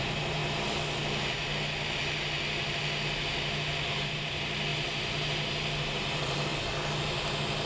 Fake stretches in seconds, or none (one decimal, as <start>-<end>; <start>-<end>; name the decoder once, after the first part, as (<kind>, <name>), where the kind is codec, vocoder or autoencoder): 0.0-0.4 (vocoder, BigVGAN v2); 3.9-4.7; 5.8-6.5